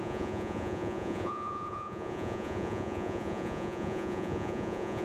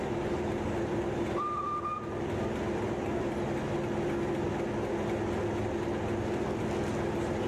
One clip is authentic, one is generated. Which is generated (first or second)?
first